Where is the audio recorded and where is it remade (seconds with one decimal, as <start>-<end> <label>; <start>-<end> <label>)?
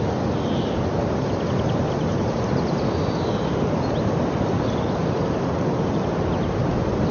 0.0-2.1 recorded; 2.1-5.2 remade; 5.2-7.1 recorded